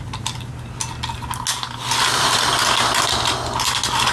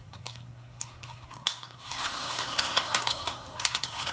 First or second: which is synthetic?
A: second